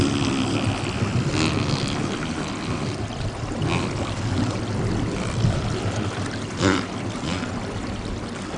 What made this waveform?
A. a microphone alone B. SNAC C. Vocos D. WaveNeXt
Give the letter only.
A